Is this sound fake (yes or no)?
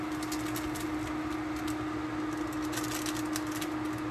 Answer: no